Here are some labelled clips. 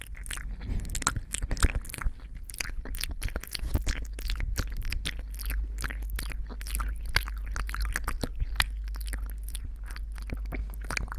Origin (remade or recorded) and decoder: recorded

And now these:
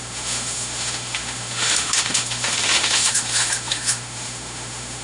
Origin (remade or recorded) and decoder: remade, autoencoder, DAC-VAE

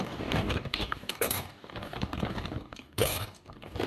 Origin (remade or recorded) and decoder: remade, codec, DAC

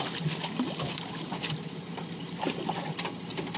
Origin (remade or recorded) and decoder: recorded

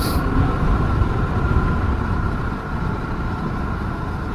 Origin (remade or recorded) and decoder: recorded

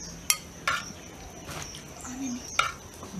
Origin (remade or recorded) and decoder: recorded